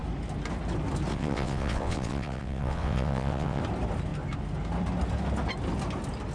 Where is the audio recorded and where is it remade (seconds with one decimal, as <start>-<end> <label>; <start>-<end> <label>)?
0.0-1.1 recorded; 1.1-3.6 remade; 3.6-6.3 recorded